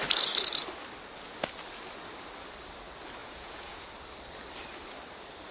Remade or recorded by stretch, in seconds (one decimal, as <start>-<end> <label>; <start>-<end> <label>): 0.0-3.2 recorded; 3.2-3.9 remade; 3.9-5.5 recorded